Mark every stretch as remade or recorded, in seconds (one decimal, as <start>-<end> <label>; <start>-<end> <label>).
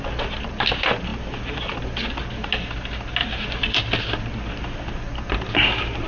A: 0.0-6.1 recorded